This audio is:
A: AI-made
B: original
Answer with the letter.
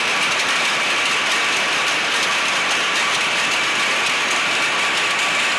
B